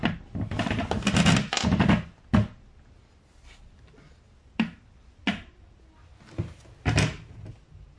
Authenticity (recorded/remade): recorded